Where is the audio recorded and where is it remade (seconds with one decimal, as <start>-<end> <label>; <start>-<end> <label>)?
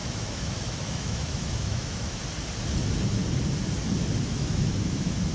0.0-2.2 remade; 2.2-4.3 recorded; 4.3-5.3 remade